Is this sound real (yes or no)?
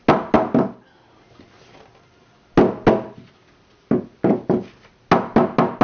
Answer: yes